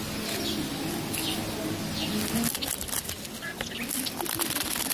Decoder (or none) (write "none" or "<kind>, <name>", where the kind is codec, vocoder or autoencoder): none